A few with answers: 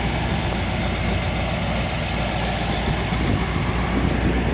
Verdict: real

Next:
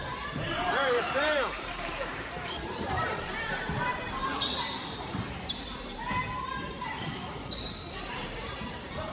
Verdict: fake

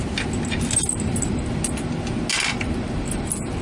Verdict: real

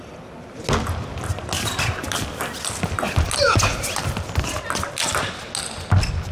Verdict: real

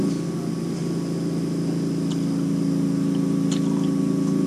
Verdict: real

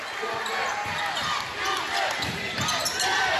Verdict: real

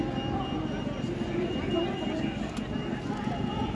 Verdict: real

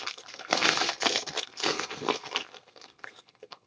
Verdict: fake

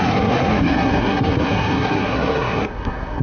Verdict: fake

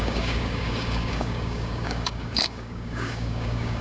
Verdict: fake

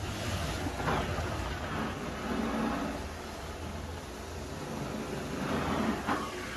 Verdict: real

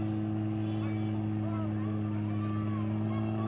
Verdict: real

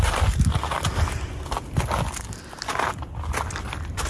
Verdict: real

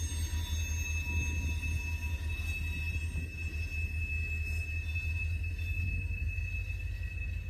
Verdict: real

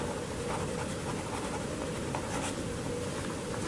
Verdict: fake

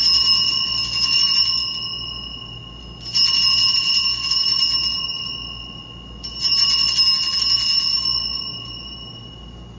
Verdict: real